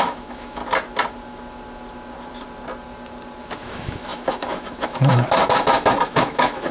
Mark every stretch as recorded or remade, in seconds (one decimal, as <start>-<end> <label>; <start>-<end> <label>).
0.0-0.6 remade; 0.6-3.4 recorded; 3.4-6.7 remade